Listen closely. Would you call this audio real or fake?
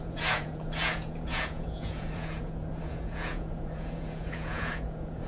fake